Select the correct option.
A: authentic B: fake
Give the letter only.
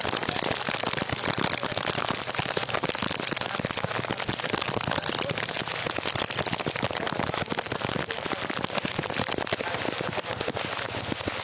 A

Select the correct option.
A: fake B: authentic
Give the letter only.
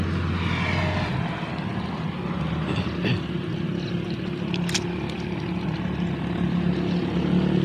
B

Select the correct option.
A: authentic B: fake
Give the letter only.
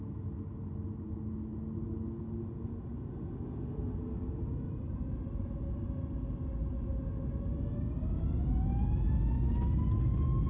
A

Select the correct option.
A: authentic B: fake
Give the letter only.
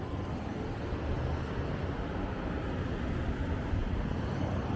A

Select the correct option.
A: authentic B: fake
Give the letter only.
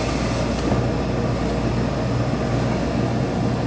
A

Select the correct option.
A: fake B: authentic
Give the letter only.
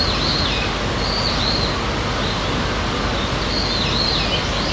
B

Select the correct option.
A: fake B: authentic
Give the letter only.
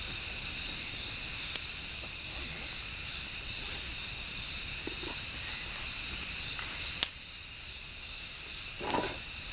A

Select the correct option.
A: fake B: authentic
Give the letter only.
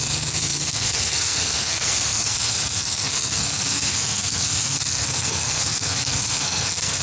A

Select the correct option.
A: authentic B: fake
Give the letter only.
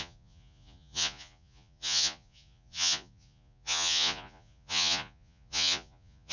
B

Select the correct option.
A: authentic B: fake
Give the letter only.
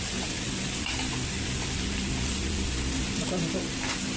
A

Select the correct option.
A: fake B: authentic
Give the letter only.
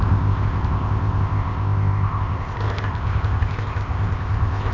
A